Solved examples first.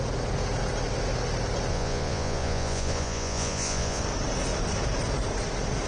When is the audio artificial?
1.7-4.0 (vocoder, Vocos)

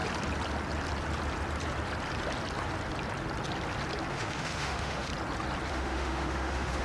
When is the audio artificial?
4.1-5.1 (autoencoder, DAC-VAE); 5.7-6.8

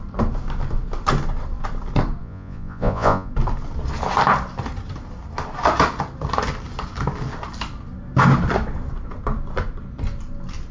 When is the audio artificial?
2.2-3.3 (vocoder, Vocos)

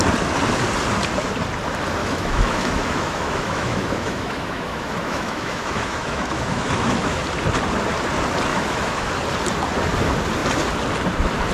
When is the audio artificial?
2.0-7.2 (autoencoder, DAC-VAE); 8.5-9.1

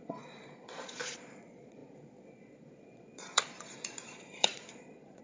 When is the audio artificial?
0.0-5.2 (vocoder, Vocos)

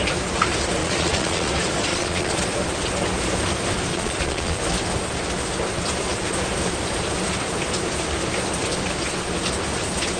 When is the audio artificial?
0.8-1.5 (vocoder, Vocos); 1.9-2.4; 3.9-4.6